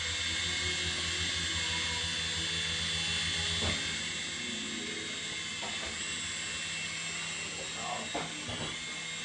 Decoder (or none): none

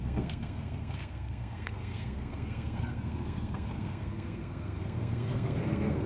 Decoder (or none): codec, SNAC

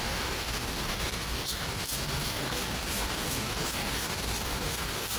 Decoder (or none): codec, DAC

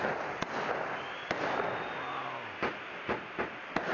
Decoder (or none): none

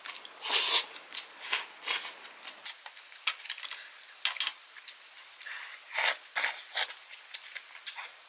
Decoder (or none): none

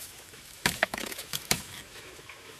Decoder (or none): autoencoder, DAC-VAE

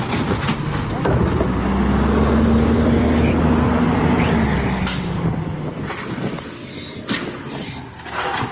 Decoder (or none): none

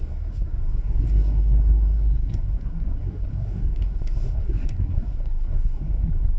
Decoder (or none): codec, SNAC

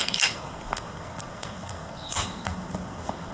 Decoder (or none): codec, SNAC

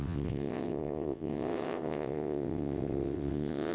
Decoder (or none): vocoder, WaveNeXt